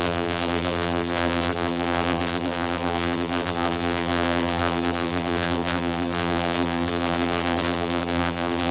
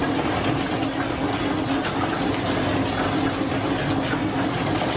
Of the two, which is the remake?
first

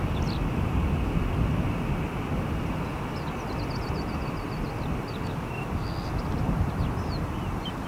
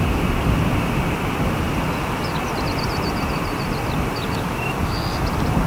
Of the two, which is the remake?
second